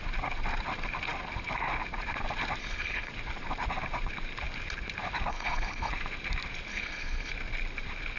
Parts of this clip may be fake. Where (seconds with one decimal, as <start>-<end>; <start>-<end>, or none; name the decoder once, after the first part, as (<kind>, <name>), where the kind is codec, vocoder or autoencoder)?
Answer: 2.6-3.1 (codec, HILCodec); 5.3-5.9; 6.7-7.3